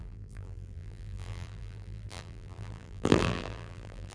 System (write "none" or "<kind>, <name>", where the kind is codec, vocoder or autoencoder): vocoder, BigVGAN v2